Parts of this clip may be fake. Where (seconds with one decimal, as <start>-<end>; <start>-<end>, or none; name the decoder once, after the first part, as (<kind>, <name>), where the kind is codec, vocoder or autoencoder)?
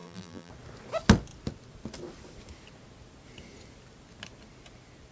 0.0-0.5 (vocoder, BigVGAN v2)